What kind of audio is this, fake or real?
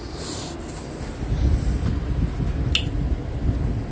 real